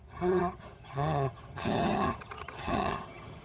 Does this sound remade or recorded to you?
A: remade